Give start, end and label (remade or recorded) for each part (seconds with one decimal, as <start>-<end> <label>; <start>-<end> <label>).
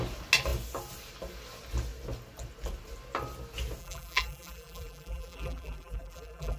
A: 0.0-3.8 recorded; 3.8-6.6 remade